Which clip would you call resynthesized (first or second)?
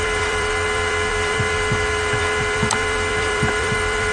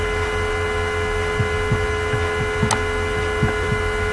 first